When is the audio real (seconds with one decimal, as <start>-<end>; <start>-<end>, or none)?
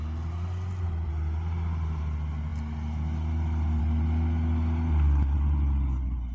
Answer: 0.0-6.3